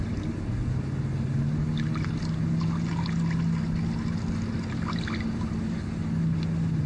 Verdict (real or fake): real